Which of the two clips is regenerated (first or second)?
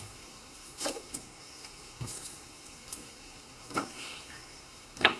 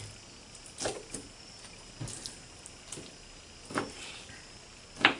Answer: first